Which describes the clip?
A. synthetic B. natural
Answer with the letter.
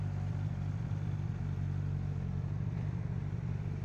B